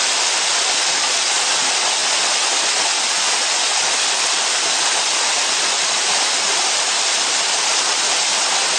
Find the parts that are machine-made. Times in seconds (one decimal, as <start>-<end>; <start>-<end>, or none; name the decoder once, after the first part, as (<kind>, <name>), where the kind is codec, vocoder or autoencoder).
none